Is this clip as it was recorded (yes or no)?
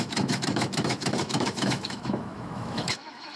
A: no